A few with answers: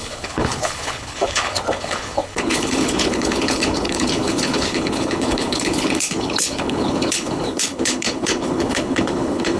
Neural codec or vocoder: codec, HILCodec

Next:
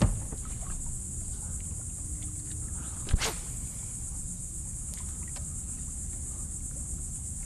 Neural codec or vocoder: none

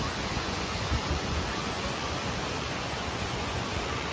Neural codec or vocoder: vocoder, Vocos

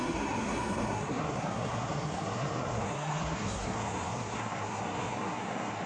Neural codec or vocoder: codec, SNAC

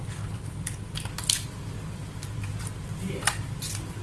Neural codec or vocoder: vocoder, BigVGAN v2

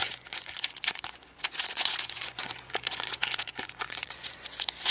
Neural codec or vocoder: vocoder, Vocos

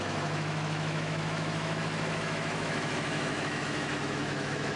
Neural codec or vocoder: autoencoder, DAC-VAE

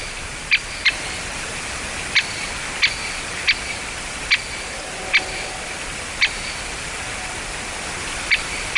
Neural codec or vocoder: vocoder, BigVGAN v2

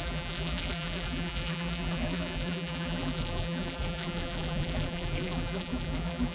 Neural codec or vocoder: vocoder, BigVGAN v2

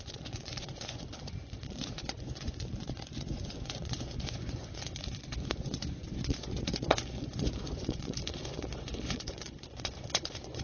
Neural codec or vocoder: vocoder, Vocos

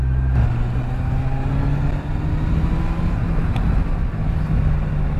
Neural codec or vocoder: none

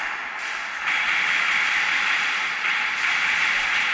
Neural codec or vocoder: vocoder, BigVGAN v2